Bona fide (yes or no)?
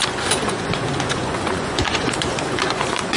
no